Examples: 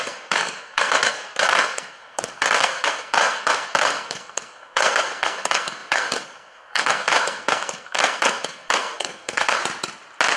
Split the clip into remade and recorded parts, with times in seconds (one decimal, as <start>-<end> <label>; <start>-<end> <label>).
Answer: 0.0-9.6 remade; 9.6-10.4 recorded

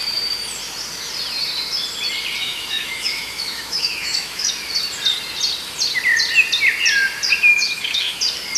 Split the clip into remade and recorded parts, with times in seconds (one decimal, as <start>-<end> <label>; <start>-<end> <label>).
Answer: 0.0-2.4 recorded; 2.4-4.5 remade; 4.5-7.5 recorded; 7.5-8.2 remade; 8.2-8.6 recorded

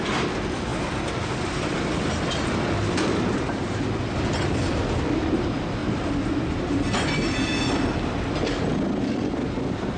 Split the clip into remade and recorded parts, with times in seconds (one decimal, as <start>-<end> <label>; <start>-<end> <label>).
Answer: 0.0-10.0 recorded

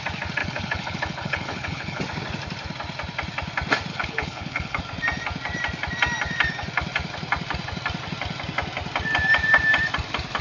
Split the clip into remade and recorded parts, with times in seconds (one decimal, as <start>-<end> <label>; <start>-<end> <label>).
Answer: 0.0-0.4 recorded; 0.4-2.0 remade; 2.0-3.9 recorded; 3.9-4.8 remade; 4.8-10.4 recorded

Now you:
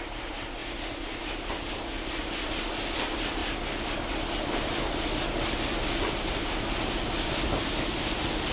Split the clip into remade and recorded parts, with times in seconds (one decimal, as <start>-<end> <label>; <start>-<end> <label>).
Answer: 0.0-8.5 recorded

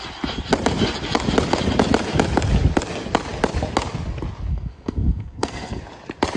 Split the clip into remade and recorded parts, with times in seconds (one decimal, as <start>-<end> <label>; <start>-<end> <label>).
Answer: 0.0-4.5 recorded; 4.5-5.8 remade; 5.8-6.4 recorded

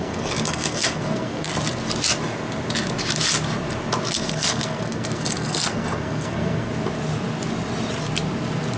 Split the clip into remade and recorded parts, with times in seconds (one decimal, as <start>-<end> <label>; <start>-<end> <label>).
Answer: 0.0-1.5 remade; 1.5-4.1 recorded; 4.1-6.7 remade; 6.7-8.8 recorded